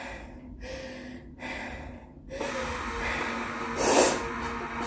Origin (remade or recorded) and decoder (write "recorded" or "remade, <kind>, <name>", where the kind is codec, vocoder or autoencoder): recorded